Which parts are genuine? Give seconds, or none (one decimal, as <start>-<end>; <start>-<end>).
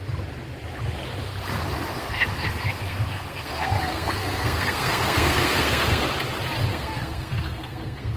0.0-1.9; 6.0-6.7